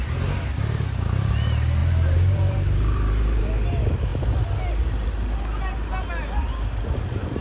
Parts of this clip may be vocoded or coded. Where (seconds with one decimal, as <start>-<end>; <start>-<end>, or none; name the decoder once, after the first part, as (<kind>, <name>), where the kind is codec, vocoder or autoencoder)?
1.8-3.4 (vocoder, BigVGAN v2)